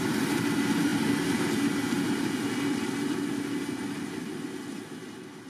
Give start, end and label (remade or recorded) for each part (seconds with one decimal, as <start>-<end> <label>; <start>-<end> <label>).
0.0-5.5 recorded